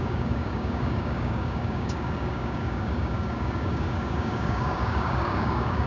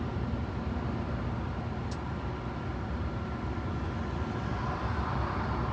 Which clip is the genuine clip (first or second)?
second